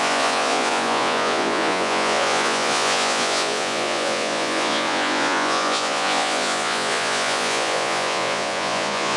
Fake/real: fake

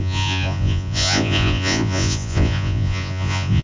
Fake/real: fake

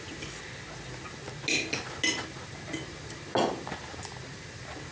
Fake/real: real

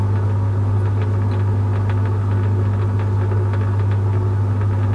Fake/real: real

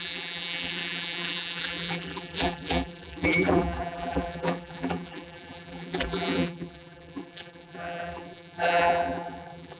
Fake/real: fake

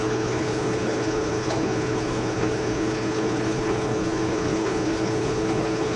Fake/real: fake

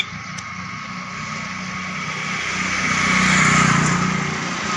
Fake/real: real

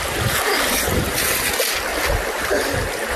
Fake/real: real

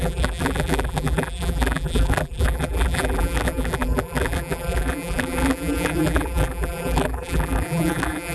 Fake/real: fake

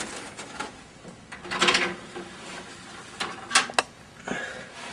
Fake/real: real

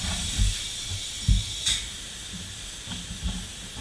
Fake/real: real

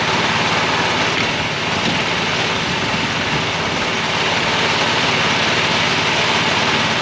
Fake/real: real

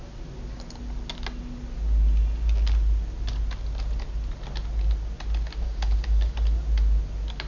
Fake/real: real